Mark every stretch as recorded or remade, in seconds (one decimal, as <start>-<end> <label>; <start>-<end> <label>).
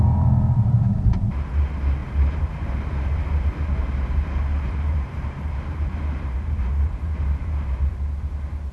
0.0-2.0 recorded; 2.0-3.5 remade; 3.5-4.5 recorded; 4.5-7.9 remade; 7.9-8.7 recorded